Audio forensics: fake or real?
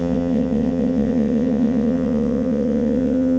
fake